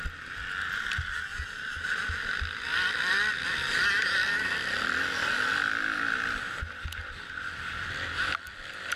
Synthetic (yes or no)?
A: no